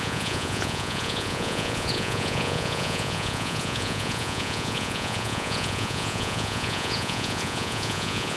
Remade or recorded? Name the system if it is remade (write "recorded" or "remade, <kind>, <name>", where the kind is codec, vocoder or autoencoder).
remade, vocoder, Vocos